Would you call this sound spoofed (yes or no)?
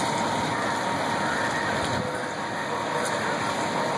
no